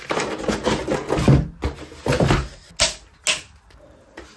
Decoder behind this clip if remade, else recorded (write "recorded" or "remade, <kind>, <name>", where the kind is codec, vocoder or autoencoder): recorded